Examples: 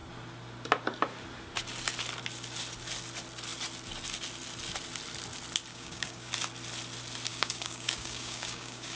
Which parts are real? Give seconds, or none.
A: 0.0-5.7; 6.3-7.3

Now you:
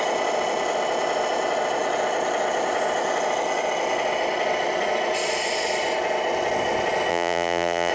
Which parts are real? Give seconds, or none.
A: 0.0-7.1

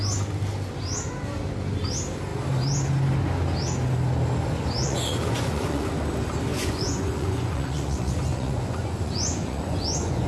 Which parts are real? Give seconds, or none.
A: 0.0-4.8; 5.9-6.5

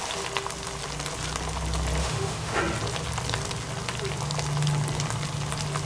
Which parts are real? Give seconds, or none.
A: 0.0-2.0; 2.6-5.9